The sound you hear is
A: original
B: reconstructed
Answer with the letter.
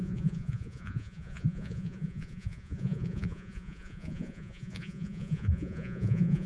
B